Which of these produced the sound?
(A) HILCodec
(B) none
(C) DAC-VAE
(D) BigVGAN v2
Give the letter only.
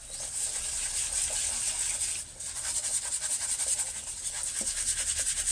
B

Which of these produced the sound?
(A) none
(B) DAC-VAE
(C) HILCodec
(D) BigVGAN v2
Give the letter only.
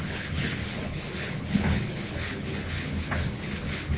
C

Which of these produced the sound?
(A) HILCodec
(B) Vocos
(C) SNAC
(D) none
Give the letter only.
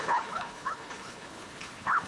A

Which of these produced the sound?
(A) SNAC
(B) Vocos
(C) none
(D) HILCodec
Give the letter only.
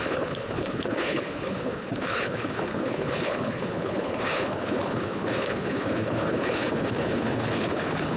D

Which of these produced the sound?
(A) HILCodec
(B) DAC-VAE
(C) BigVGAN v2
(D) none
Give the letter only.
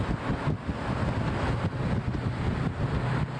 D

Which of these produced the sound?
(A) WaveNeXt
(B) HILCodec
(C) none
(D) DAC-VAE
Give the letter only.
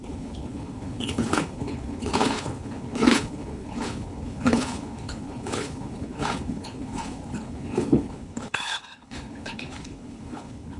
B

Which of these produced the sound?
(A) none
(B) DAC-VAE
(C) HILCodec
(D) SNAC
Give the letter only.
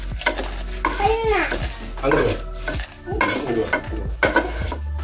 A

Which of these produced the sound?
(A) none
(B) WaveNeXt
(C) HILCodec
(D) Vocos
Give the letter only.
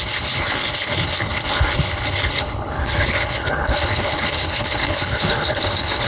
C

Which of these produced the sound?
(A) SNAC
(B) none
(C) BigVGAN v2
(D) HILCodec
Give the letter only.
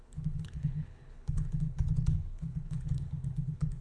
D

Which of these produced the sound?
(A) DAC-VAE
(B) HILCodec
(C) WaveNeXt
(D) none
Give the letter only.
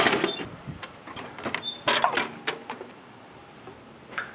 D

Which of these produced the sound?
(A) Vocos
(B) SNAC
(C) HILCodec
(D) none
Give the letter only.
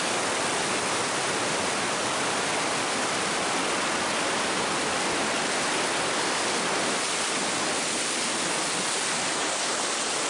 D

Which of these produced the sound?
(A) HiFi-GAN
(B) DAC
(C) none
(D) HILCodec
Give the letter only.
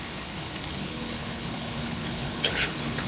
D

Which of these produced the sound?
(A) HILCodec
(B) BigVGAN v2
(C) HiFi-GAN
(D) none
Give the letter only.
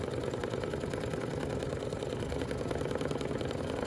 D